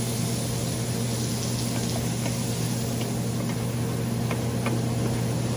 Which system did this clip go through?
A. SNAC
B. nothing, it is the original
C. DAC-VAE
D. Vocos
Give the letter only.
B